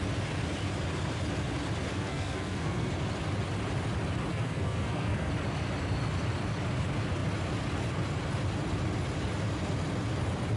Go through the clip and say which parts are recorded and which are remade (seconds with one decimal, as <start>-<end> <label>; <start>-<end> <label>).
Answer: 0.0-1.9 recorded; 1.9-2.9 remade; 2.9-4.3 recorded; 4.3-5.3 remade; 5.3-10.6 recorded